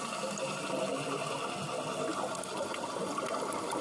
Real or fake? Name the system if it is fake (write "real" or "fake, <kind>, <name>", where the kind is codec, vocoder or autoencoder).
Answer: real